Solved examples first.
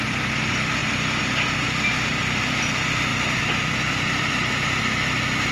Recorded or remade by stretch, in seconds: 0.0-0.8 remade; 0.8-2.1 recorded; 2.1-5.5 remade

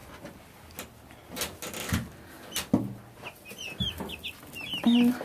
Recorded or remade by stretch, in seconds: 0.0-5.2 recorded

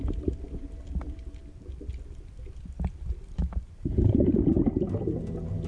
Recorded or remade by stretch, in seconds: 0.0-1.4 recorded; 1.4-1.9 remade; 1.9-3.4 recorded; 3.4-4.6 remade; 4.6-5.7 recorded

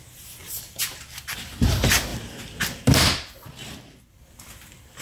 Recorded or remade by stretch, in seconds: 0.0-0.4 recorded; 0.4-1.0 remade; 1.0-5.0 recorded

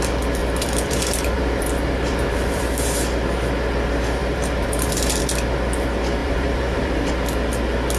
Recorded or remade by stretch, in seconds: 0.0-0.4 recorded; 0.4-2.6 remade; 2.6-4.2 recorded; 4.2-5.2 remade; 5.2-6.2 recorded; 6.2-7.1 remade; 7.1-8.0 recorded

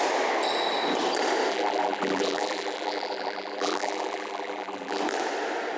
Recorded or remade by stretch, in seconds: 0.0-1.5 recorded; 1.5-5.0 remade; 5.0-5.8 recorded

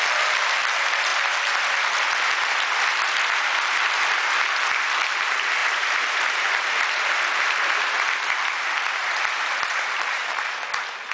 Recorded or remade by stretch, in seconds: 0.0-5.6 recorded; 5.6-6.8 remade; 6.8-9.0 recorded; 9.0-10.4 remade; 10.4-11.1 recorded